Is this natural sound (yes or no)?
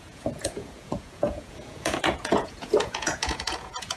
no